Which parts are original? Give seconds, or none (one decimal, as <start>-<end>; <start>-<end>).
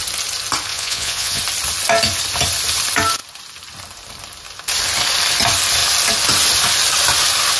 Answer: 0.0-0.7; 1.4-7.6